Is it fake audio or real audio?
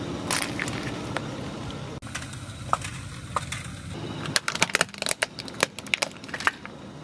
real